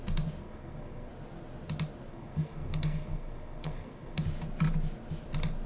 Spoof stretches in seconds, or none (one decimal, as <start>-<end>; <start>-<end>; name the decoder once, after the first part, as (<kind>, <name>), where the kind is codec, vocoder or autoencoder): 0.4-1.1 (codec, SNAC); 2.1-4.2